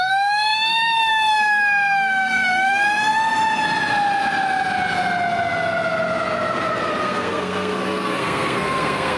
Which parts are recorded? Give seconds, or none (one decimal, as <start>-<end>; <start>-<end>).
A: 3.4-7.0